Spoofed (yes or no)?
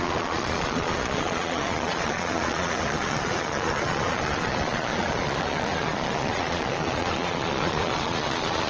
yes